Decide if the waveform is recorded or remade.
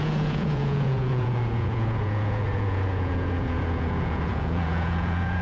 remade